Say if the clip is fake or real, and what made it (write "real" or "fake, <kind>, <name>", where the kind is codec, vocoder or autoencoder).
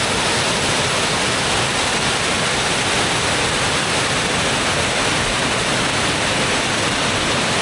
real